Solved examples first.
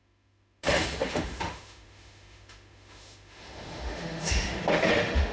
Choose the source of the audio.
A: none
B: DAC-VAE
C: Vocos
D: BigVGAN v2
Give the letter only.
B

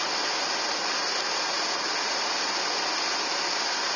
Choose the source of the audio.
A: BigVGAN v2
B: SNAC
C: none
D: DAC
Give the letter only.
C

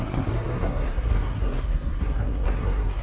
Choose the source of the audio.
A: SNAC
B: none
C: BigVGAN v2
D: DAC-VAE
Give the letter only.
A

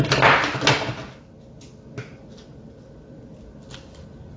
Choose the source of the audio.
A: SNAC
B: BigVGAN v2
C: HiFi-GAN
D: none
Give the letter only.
D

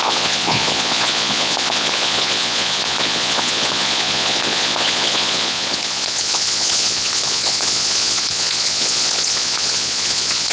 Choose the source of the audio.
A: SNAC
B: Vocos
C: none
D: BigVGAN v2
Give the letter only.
B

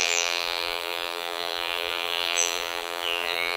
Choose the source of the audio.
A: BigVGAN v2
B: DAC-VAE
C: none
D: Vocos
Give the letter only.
A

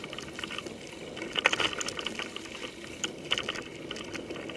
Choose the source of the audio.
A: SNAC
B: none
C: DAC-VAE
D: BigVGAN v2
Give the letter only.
B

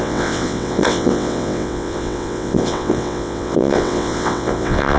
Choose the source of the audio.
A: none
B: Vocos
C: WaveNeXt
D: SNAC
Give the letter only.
C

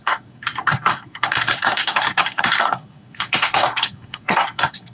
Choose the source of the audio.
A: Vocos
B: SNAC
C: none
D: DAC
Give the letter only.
B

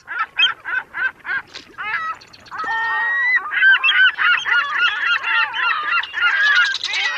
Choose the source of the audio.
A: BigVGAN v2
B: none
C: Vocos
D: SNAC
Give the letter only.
B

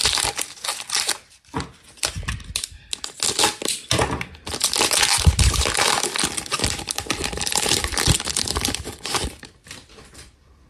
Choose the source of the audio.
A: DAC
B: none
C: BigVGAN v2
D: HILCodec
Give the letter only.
B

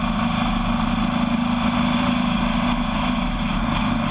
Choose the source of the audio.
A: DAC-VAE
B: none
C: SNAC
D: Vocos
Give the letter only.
B